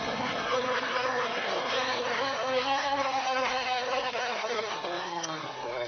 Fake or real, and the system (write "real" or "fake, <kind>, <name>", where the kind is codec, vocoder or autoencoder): fake, codec, SNAC